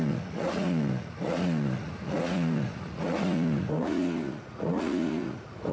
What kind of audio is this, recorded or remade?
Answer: remade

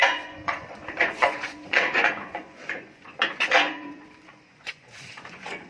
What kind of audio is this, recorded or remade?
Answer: remade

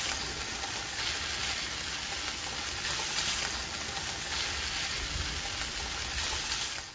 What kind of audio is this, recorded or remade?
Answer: recorded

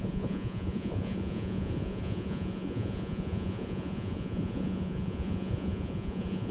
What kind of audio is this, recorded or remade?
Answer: remade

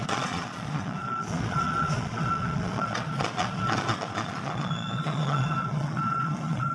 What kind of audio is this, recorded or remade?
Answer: remade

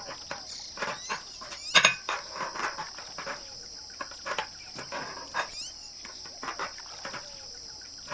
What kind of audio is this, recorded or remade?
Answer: recorded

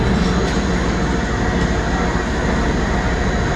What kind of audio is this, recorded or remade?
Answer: recorded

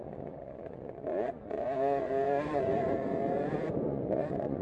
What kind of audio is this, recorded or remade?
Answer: remade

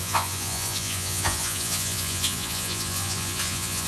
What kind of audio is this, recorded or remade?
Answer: remade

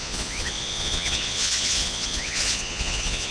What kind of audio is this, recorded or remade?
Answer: remade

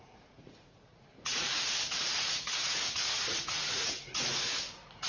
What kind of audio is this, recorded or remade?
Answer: remade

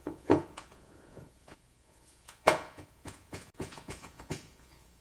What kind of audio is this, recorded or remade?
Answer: remade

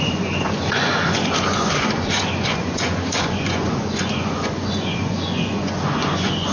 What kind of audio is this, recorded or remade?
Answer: remade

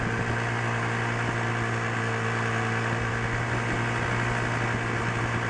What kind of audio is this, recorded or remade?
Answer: recorded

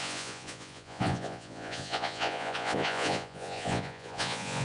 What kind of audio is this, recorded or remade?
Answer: remade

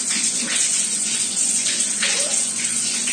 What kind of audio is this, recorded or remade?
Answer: remade